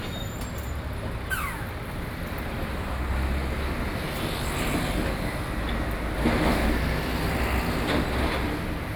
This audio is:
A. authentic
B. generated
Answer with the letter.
A